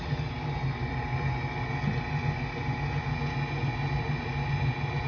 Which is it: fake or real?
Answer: real